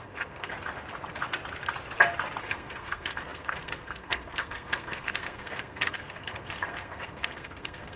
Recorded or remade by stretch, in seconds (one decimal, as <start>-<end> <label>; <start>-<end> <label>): 0.0-0.5 remade; 0.5-2.4 recorded; 2.4-8.0 remade